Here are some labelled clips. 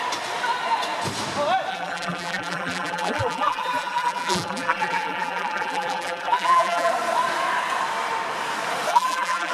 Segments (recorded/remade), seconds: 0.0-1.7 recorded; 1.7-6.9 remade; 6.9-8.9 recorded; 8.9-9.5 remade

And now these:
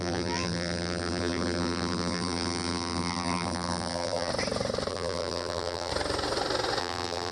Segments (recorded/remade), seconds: 0.0-4.3 remade; 4.3-4.9 recorded; 4.9-5.9 remade; 5.9-6.8 recorded; 6.8-7.3 remade

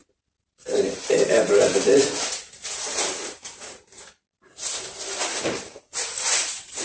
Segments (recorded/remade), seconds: 0.0-6.8 remade

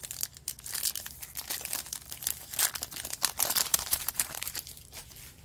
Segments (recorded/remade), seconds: 0.0-3.7 recorded; 3.7-4.8 remade; 4.8-5.4 recorded